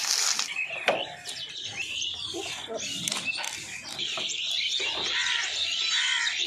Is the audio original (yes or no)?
yes